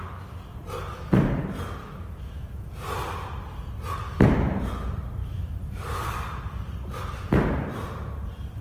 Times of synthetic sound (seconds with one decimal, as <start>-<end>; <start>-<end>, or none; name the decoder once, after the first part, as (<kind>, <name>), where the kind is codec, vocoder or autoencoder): 1.8-2.7 (autoencoder, DAC-VAE); 5.2-5.8